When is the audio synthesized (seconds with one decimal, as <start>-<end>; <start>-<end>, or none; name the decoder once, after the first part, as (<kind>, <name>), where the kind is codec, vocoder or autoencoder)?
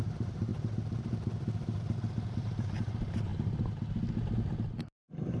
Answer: 0.0-0.5 (vocoder, BigVGAN v2); 2.3-3.3